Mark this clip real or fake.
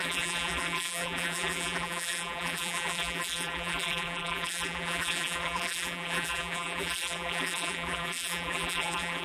fake